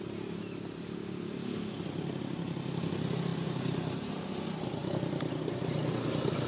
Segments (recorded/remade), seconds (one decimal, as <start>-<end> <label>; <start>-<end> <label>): 0.0-6.5 recorded